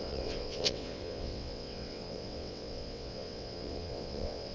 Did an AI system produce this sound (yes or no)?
yes